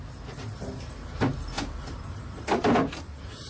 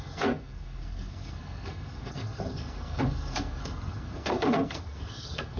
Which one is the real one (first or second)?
first